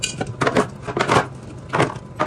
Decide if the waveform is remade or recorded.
recorded